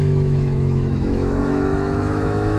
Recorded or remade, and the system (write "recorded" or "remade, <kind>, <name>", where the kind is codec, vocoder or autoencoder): remade, autoencoder, DAC-VAE